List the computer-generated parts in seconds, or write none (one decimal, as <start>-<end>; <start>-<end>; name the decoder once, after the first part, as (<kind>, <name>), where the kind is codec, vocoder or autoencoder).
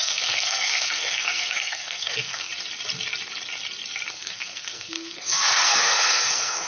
0.0-2.5 (codec, SNAC); 4.1-6.7